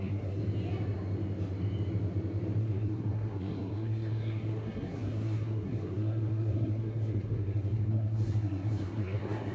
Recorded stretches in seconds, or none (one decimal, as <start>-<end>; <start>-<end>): 0.4-2.6